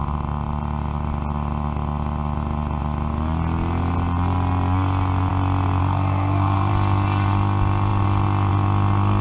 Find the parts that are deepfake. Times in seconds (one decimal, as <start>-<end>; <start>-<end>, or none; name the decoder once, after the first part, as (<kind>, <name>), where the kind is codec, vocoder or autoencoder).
5.8-6.7 (codec, SNAC)